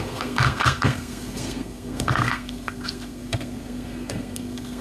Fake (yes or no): yes